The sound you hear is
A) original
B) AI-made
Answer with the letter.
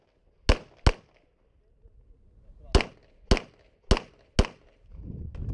A